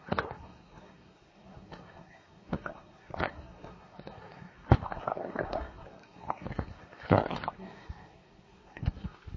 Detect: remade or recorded remade